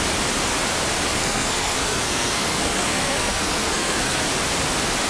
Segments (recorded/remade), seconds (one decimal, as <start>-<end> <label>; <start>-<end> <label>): 0.0-1.1 recorded; 1.1-4.2 remade; 4.2-5.1 recorded